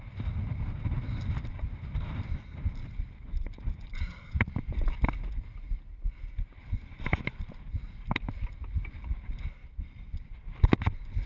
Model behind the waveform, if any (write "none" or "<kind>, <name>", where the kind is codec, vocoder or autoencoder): none